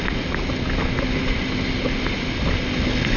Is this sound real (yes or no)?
yes